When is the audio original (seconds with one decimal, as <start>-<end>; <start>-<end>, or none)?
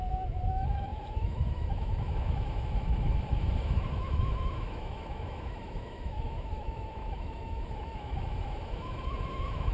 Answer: none